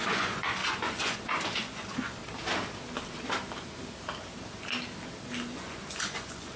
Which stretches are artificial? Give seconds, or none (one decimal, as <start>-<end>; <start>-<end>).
0.0-2.2; 5.4-6.6